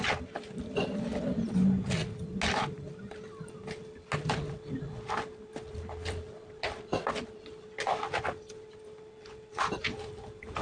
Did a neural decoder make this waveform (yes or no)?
no